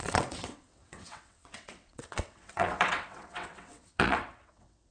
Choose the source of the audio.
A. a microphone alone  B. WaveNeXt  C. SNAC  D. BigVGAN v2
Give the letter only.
B